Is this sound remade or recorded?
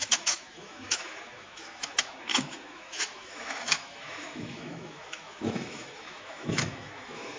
remade